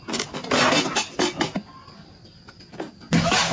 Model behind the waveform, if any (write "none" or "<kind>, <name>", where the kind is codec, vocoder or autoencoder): none